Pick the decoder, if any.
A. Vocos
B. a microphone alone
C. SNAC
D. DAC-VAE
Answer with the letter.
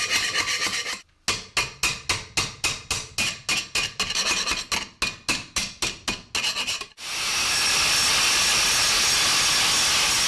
B